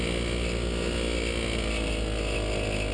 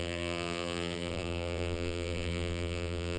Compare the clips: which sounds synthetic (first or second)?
second